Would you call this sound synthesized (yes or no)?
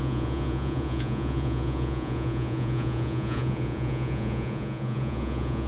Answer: yes